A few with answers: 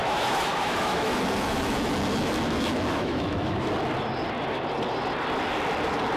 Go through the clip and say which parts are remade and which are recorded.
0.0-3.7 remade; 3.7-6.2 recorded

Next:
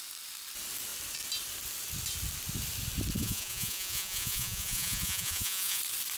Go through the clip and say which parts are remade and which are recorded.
0.0-3.2 recorded; 3.2-5.8 remade; 5.8-6.2 recorded

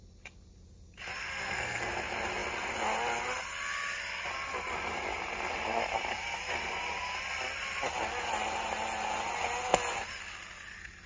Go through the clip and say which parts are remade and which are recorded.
0.0-1.2 recorded; 1.2-1.9 remade; 1.9-11.1 recorded

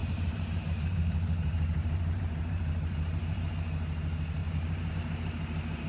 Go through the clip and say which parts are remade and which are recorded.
0.0-3.5 remade; 3.5-4.4 recorded; 4.4-4.9 remade; 4.9-5.9 recorded

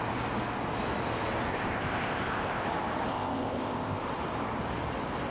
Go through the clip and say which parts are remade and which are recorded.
0.0-1.5 recorded; 1.5-2.6 remade; 2.6-3.1 recorded; 3.1-4.0 remade; 4.0-5.3 recorded